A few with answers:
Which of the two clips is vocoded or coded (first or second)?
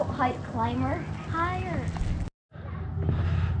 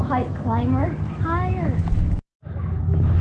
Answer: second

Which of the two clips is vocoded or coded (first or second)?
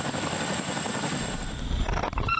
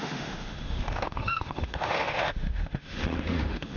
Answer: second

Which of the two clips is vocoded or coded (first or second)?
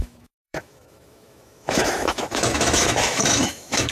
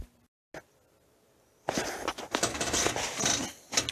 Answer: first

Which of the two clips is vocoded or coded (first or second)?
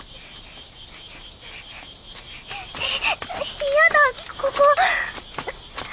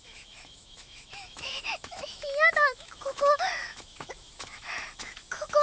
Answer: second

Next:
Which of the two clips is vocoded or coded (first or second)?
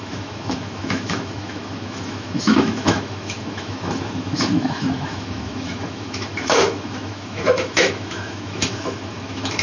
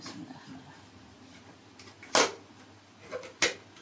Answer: first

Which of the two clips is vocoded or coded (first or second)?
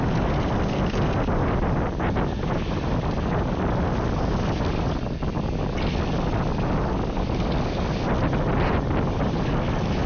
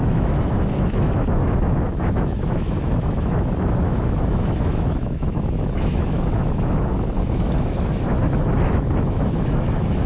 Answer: second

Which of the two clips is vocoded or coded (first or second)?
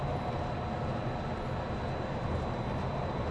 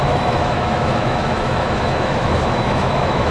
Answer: second